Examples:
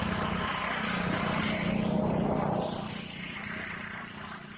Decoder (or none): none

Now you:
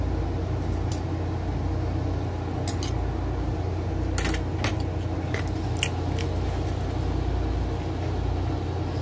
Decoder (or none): none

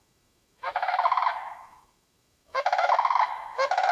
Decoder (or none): autoencoder, DAC-VAE